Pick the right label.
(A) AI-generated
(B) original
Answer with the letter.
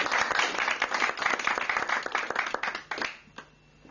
B